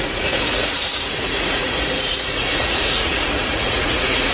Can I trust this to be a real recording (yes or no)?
no